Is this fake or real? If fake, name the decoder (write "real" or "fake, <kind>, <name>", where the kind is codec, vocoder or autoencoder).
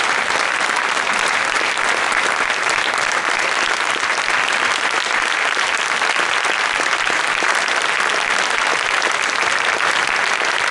real